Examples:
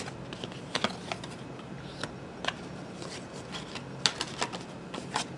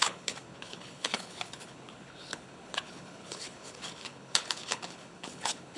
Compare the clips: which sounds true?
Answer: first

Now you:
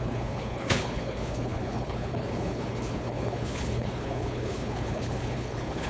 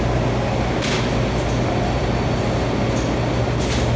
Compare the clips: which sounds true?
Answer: second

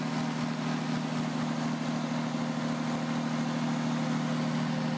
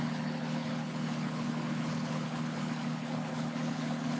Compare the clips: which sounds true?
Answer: first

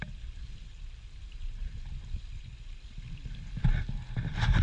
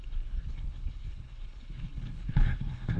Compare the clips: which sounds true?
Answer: first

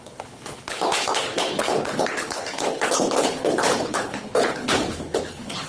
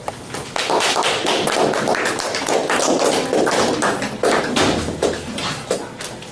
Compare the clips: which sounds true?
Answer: second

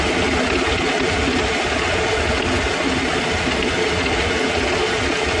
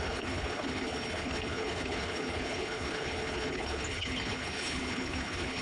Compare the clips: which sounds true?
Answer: first